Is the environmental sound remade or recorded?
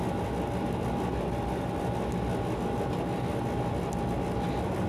recorded